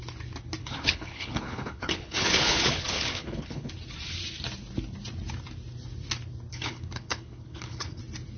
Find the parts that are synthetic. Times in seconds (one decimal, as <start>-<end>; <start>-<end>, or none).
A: 0.6-3.7; 6.5-8.0